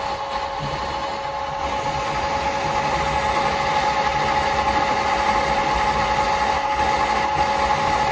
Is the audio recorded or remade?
recorded